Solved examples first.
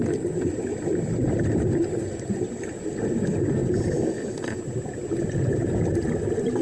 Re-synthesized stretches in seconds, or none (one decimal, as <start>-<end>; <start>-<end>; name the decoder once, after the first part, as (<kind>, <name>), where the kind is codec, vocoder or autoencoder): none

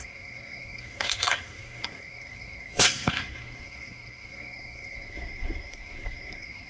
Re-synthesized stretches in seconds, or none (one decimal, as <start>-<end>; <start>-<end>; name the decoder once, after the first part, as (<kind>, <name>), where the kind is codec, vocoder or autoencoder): 0.0-6.7 (codec, SNAC)

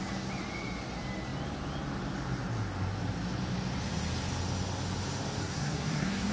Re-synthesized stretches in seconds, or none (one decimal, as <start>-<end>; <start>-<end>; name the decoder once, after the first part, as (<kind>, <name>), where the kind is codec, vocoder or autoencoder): 5.4-6.3 (codec, SNAC)

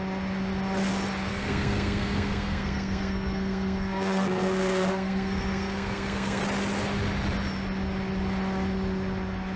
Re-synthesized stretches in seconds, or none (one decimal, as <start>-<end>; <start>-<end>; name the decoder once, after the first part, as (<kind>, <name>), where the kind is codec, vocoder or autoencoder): 1.3-6.4 (codec, SNAC)

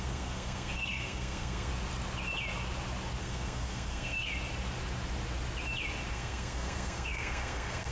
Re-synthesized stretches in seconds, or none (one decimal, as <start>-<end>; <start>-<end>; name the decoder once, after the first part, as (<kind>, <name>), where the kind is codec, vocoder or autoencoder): 0.0-1.7 (codec, SNAC); 3.2-4.3; 6.1-7.9

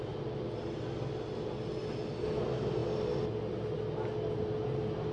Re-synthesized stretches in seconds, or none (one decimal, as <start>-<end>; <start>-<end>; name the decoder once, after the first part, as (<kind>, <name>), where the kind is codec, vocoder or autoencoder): none

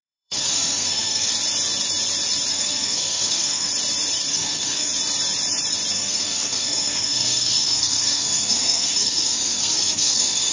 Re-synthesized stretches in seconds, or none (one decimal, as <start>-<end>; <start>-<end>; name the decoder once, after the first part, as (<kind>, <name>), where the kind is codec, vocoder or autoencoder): 0.0-1.3 (codec, SNAC); 2.5-3.7; 4.3-4.9; 5.9-10.5

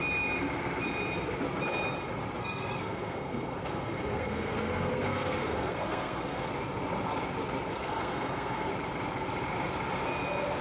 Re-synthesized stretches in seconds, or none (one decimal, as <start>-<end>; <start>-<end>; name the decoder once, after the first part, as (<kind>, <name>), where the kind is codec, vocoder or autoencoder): 2.4-6.5 (codec, SNAC); 7.7-8.7